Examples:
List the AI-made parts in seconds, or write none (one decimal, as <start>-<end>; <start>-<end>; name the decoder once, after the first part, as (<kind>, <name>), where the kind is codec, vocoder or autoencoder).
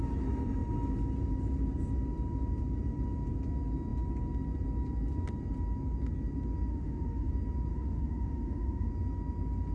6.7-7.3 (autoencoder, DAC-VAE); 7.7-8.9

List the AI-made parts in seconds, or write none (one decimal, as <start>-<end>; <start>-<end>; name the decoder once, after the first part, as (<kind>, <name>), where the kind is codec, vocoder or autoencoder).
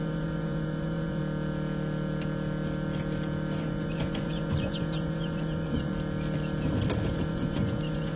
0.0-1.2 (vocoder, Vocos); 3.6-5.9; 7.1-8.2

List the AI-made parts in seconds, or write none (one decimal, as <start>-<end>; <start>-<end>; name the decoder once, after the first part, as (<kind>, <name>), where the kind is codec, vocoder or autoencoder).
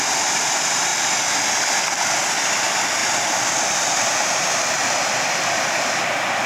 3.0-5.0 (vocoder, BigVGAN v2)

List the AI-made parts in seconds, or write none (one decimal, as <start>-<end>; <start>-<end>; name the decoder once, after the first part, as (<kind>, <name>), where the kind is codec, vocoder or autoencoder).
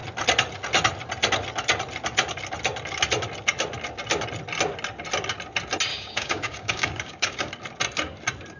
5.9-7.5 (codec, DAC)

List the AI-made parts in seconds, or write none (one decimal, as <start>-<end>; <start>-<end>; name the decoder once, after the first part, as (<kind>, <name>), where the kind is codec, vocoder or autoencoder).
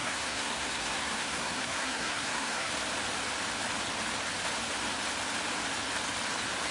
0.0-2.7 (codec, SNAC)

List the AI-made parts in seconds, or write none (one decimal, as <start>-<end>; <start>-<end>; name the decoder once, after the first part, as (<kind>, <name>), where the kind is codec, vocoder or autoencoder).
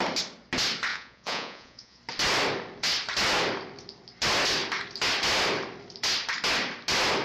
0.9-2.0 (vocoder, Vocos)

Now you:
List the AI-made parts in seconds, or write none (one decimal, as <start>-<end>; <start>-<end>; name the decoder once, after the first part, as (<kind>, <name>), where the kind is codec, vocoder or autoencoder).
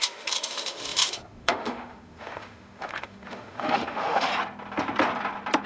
0.0-4.3 (autoencoder, DAC-VAE)